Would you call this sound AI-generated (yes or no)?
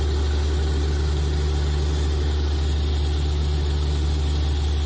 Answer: no